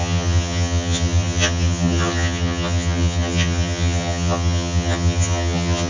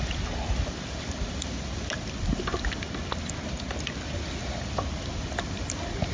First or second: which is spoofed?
first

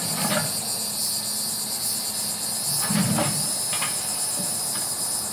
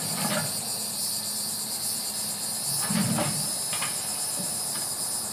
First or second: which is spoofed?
second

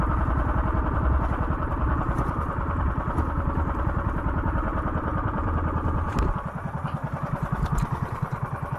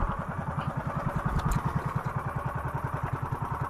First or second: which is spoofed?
first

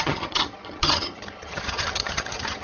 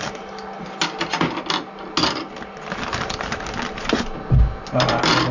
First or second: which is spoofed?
first